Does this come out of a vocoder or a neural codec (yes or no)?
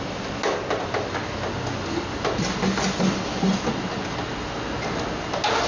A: no